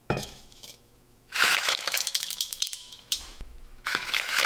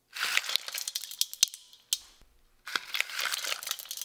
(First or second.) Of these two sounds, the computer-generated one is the first